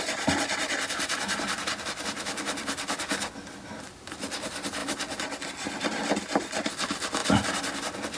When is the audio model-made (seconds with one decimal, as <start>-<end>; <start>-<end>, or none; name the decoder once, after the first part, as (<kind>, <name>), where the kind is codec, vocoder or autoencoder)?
0.0-4.8 (vocoder, BigVGAN v2); 5.8-8.2